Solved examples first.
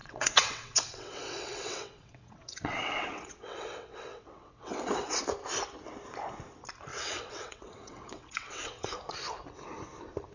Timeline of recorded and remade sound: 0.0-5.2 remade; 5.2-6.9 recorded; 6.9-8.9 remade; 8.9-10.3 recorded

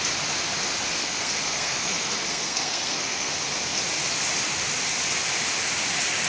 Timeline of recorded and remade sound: 0.0-1.0 recorded; 1.0-3.3 remade; 3.3-6.3 recorded

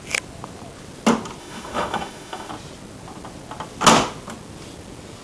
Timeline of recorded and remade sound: 0.0-1.4 recorded; 1.4-2.5 remade; 2.5-5.2 recorded